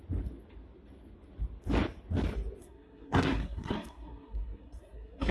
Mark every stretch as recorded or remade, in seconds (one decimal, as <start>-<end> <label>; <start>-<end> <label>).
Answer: 0.0-2.6 recorded; 2.6-5.3 remade